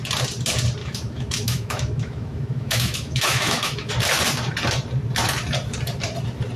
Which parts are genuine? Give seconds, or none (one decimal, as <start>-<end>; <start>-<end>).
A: 0.0-0.8; 3.9-6.6